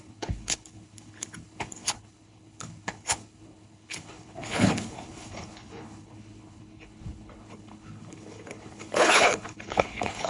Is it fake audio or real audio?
fake